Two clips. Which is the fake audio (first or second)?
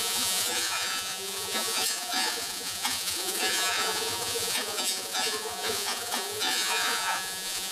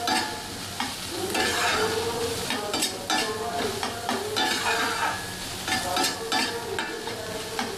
first